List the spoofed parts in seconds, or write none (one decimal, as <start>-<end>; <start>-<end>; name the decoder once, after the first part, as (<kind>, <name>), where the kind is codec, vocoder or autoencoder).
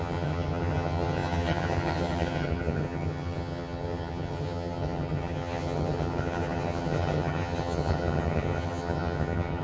0.0-9.6 (vocoder, HiFi-GAN)